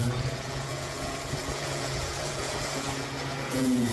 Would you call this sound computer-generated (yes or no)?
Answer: yes